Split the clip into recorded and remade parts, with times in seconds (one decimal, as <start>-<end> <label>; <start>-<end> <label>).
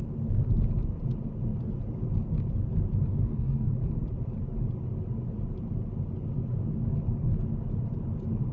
0.0-3.1 recorded; 3.1-3.7 remade; 3.7-8.5 recorded